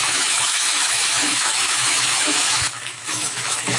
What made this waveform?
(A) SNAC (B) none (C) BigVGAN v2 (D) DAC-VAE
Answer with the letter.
D